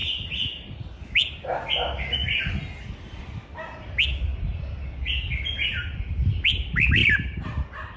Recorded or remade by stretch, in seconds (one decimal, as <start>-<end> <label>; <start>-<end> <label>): 0.0-8.0 recorded